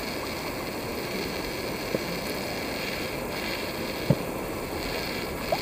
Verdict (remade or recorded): recorded